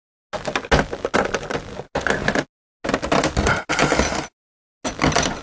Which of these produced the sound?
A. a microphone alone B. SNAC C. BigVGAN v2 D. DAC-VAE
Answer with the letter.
A